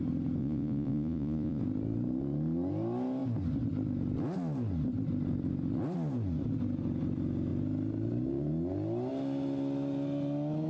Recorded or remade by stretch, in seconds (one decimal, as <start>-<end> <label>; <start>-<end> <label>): 0.0-0.4 recorded; 0.4-1.6 remade; 1.6-10.7 recorded